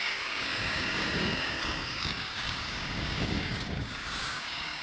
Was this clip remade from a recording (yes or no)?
yes